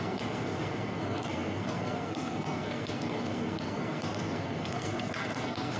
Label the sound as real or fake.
fake